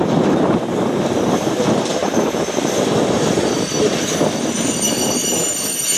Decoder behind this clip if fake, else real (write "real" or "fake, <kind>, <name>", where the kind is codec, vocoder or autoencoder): fake, vocoder, BigVGAN v2